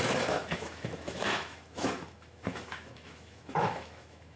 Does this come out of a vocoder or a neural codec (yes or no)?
yes